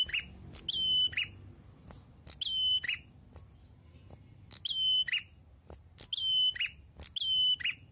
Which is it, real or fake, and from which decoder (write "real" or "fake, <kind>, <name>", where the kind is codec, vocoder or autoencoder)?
real